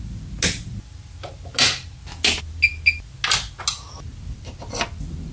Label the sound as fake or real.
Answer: real